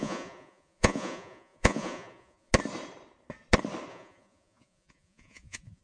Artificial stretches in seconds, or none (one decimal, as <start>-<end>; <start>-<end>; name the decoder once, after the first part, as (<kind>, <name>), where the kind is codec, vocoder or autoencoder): 0.0-2.5 (vocoder, Vocos); 3.9-5.8